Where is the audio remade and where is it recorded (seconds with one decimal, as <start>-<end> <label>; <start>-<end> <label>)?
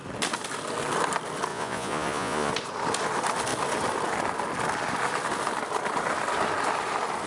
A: 0.0-1.5 recorded; 1.5-2.5 remade; 2.5-7.3 recorded